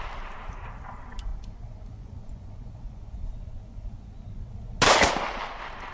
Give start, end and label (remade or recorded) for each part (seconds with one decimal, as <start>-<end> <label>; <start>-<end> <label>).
0.0-1.3 recorded; 1.3-4.5 remade; 4.5-5.9 recorded